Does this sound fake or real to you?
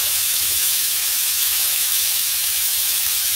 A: fake